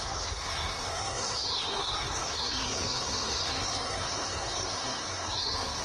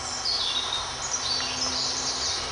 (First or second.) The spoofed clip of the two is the first